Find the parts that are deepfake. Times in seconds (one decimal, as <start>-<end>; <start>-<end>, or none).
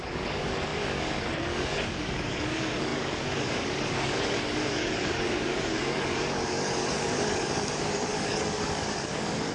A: 0.0-9.5